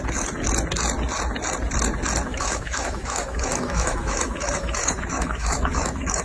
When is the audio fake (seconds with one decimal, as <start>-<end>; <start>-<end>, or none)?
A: 2.3-6.2